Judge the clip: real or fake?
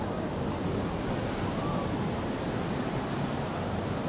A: real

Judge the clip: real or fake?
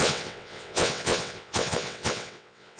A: fake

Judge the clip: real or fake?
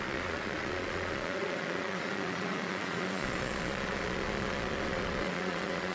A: fake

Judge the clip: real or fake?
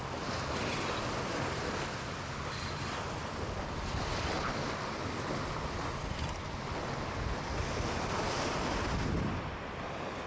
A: real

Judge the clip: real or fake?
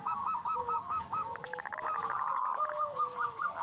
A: fake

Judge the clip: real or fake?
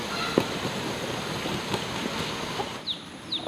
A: real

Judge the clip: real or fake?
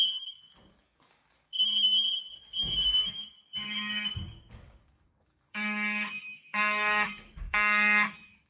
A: fake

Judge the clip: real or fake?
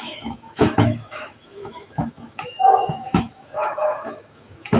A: fake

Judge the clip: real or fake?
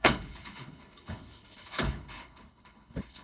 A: fake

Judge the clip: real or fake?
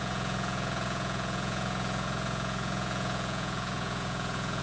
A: fake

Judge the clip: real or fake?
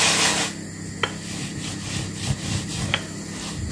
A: real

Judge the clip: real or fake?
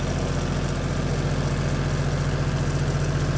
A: real